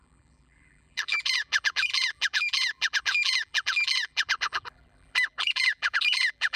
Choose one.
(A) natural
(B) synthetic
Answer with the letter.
B